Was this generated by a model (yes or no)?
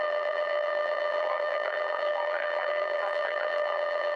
yes